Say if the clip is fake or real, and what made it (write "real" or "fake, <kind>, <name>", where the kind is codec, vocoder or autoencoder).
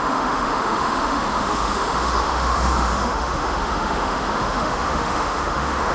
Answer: fake, autoencoder, DAC-VAE